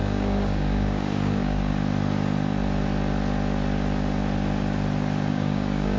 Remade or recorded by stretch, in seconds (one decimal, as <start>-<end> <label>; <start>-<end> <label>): 0.0-1.7 remade; 1.7-5.3 recorded; 5.3-6.0 remade